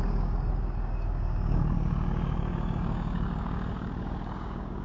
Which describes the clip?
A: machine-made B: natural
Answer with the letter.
A